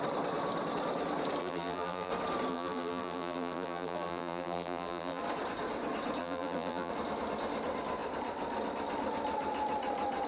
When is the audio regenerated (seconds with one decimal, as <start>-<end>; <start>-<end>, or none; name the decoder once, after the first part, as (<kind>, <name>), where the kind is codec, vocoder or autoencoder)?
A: 1.4-2.1 (vocoder, BigVGAN v2); 2.5-5.2; 6.2-6.9